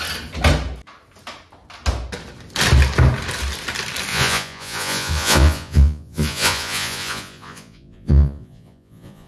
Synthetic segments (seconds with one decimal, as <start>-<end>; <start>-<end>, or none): 4.1-9.3